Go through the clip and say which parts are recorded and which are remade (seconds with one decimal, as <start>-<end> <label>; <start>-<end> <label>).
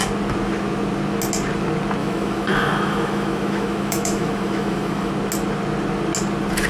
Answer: 0.0-2.0 recorded; 2.0-5.1 remade; 5.1-6.7 recorded